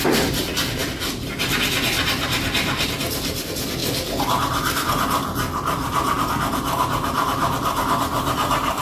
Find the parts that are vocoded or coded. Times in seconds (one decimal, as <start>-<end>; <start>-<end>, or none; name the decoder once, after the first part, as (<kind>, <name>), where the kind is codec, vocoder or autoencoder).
none